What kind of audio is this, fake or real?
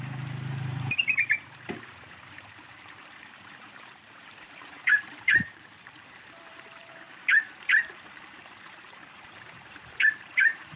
fake